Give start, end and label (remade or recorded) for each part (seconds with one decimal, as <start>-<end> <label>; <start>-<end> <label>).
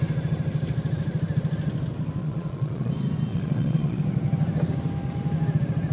0.0-2.2 recorded; 2.2-2.9 remade; 2.9-3.3 recorded; 3.3-4.0 remade; 4.0-5.9 recorded